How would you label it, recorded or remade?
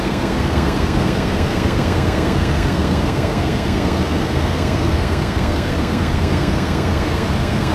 remade